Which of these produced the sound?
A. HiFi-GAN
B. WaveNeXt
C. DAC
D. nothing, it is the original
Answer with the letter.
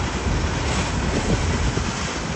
D